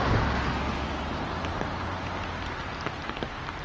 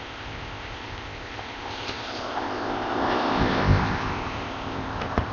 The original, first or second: first